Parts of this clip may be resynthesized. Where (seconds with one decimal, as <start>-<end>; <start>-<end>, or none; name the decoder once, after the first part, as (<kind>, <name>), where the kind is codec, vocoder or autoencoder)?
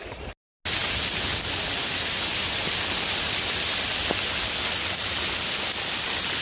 none